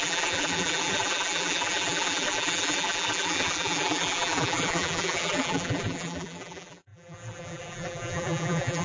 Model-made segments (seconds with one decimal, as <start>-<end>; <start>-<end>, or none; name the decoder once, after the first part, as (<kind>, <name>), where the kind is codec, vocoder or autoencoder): 0.0-8.8 (vocoder, BigVGAN v2)